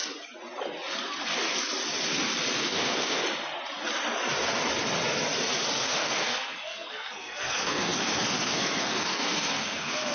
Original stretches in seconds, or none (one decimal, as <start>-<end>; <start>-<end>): 0.0-2.6; 3.2-5.8